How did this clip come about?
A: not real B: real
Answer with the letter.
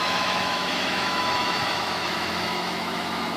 A